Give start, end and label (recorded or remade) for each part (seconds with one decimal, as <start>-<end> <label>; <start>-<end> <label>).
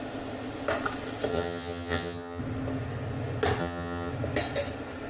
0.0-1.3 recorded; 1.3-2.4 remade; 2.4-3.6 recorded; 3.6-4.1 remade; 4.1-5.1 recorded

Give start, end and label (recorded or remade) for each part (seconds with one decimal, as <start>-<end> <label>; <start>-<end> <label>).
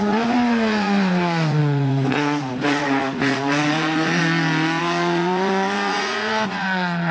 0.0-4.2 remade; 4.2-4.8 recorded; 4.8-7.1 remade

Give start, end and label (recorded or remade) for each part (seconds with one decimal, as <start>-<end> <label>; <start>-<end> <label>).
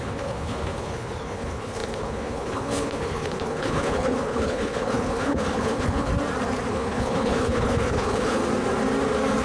0.0-6.1 remade; 6.1-6.7 recorded; 6.7-8.4 remade; 8.4-9.4 recorded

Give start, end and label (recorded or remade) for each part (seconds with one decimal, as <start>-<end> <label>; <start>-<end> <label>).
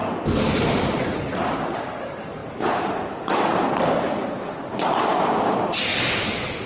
0.0-6.7 recorded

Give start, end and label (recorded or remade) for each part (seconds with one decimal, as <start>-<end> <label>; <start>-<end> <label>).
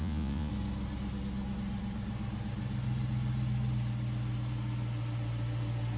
0.0-0.5 remade; 0.5-6.0 recorded